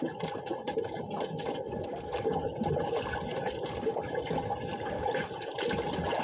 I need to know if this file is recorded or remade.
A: recorded